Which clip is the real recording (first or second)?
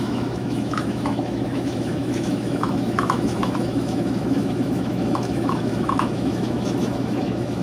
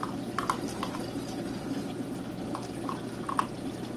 second